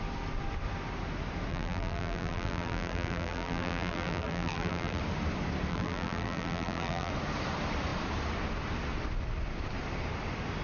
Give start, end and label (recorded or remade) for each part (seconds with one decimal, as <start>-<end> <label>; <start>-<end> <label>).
0.0-1.5 recorded; 1.5-5.0 remade; 5.0-5.7 recorded; 5.7-7.1 remade; 7.1-10.6 recorded